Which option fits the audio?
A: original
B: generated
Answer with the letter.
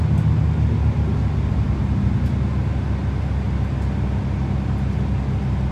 A